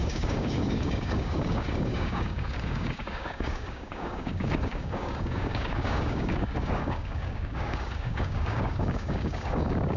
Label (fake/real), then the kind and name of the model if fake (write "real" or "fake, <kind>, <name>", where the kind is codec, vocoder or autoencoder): fake, codec, DAC